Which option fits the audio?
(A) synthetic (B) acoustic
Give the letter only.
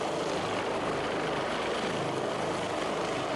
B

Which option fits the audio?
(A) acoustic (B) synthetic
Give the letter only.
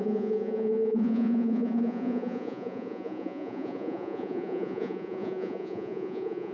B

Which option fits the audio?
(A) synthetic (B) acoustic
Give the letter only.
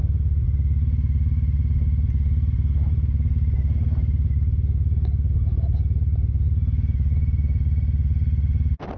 B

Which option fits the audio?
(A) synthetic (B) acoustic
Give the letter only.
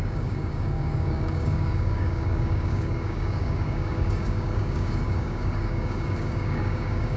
A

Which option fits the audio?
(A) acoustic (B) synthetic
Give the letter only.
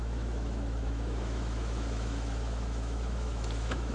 B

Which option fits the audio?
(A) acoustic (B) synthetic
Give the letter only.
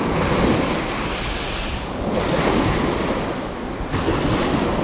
A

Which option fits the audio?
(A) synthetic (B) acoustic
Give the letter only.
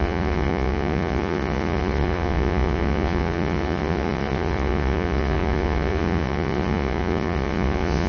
A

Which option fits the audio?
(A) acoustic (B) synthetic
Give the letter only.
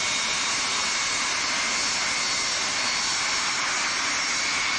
A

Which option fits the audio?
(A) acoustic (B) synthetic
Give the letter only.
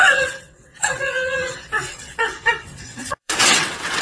B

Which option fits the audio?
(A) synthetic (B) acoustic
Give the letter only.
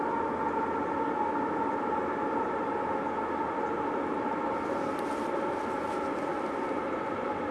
B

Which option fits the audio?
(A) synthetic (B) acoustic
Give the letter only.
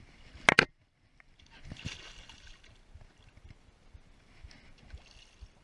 B